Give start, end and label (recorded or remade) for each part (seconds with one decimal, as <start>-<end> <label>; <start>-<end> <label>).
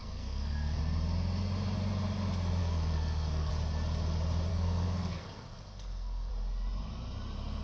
0.0-0.8 remade; 0.8-2.6 recorded; 2.6-3.5 remade; 3.5-4.5 recorded; 4.5-6.3 remade; 6.3-7.6 recorded